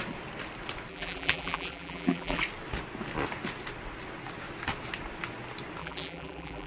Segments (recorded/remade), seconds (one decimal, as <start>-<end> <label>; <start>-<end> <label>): 0.0-0.9 recorded; 0.9-2.4 remade; 2.4-5.8 recorded; 5.8-6.7 remade